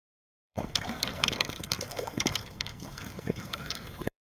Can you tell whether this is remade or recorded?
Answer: remade